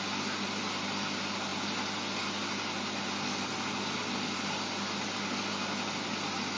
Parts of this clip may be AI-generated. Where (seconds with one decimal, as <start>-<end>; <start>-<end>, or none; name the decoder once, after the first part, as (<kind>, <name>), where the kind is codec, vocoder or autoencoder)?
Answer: none

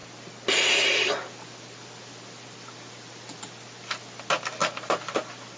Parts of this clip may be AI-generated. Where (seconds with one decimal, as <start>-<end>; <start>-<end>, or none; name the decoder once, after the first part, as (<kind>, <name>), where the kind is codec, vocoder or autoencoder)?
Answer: none